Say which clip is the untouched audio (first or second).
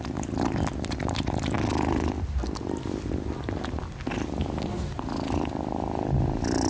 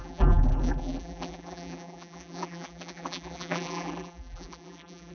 first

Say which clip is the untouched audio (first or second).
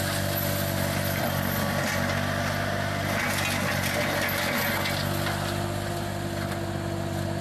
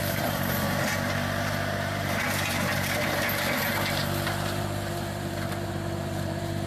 first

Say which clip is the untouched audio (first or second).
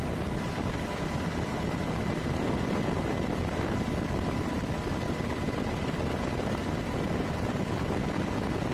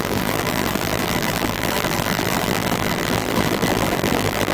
first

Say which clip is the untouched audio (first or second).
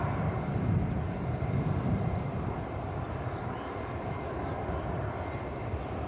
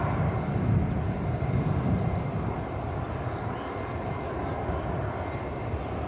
second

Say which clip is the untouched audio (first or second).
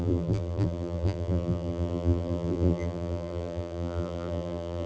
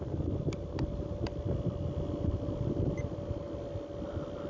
second